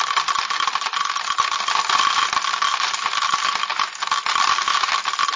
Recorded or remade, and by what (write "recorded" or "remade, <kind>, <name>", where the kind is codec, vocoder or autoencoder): recorded